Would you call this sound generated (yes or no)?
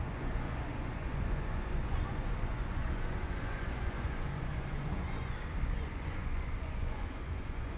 yes